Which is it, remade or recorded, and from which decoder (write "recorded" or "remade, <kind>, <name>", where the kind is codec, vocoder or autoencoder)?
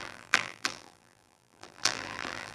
remade, vocoder, BigVGAN v2